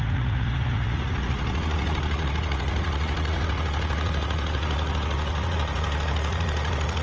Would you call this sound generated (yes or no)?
yes